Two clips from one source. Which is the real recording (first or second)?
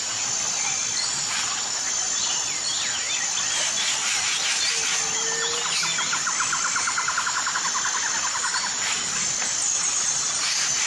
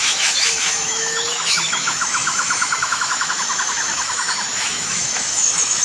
first